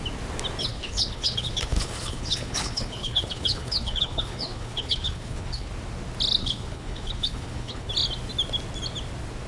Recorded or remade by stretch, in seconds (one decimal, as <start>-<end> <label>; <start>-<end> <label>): 0.0-0.6 recorded; 0.6-5.7 remade; 5.7-6.4 recorded; 6.4-7.9 remade; 7.9-9.5 recorded